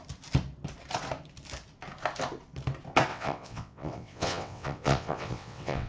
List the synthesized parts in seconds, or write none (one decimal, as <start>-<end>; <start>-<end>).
3.1-5.9